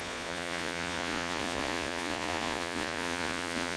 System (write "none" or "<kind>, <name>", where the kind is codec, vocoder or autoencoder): vocoder, Vocos